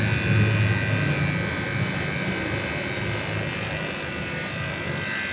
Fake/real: real